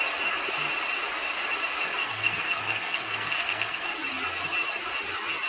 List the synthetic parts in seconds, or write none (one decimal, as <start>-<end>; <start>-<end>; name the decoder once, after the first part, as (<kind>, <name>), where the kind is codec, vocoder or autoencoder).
2.0-3.9 (codec, SNAC)